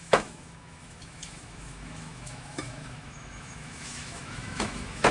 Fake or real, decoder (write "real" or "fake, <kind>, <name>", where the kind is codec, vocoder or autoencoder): fake, autoencoder, DAC-VAE